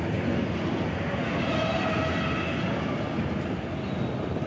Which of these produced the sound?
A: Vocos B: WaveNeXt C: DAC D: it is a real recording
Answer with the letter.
D